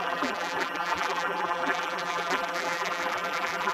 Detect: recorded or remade remade